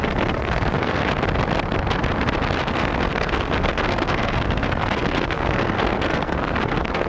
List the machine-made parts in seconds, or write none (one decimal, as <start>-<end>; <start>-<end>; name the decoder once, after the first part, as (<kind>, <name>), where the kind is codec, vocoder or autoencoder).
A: 0.0-1.0 (codec, SNAC); 2.6-7.1